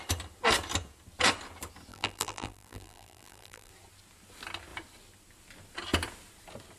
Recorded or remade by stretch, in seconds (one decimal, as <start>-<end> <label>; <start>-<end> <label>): 0.0-1.9 recorded; 1.9-3.7 remade; 3.7-6.8 recorded